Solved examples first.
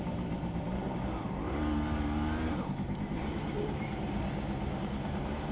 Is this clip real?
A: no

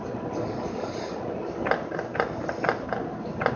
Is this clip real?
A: yes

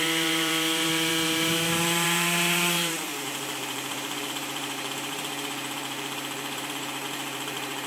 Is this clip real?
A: no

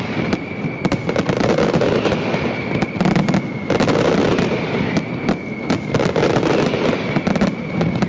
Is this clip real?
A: yes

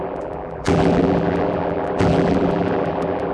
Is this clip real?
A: no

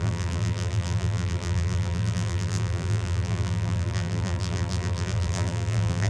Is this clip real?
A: no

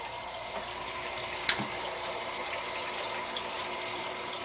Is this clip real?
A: no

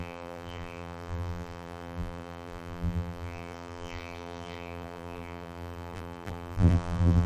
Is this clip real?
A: no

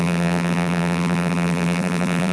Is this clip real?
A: no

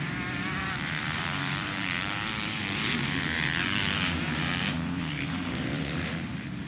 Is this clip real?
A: no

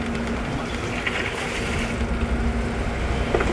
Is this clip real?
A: yes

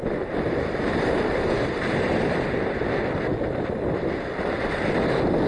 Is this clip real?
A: no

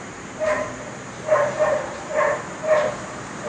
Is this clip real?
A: no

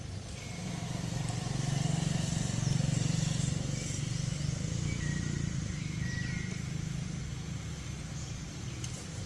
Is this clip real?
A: yes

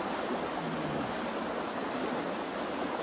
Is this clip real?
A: yes